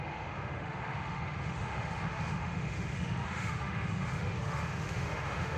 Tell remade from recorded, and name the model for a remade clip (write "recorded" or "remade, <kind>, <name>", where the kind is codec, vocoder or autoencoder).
remade, autoencoder, DAC-VAE